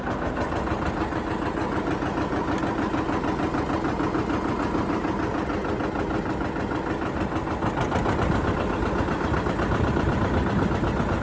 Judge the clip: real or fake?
real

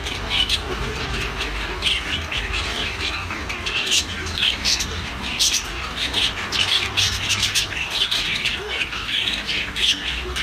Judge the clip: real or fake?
fake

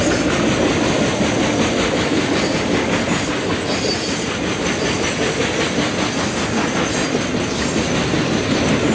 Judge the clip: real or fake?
real